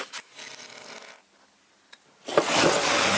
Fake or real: real